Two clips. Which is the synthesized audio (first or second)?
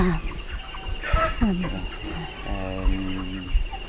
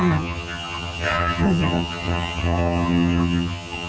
second